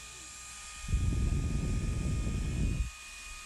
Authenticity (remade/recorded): recorded